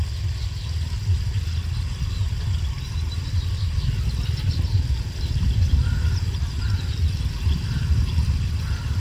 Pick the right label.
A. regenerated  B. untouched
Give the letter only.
B